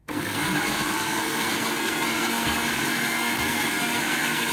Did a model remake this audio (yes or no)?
yes